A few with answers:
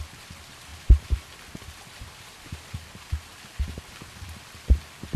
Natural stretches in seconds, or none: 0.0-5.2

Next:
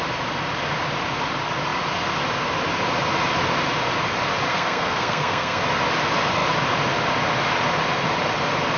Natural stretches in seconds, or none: 0.0-4.5; 5.6-8.8